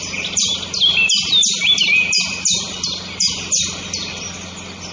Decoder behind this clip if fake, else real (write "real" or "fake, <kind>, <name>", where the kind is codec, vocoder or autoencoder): real